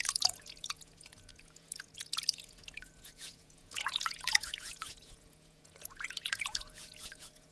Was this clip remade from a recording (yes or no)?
yes